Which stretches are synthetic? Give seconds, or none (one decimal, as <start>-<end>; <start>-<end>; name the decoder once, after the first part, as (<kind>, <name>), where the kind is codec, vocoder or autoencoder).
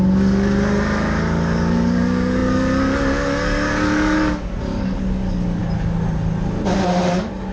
0.0-5.6 (codec, DAC); 7.1-7.5